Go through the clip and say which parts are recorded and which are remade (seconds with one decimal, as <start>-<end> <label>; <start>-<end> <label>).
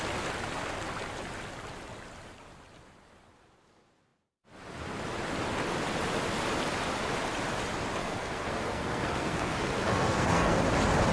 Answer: 0.0-8.0 recorded; 8.0-10.6 remade; 10.6-11.1 recorded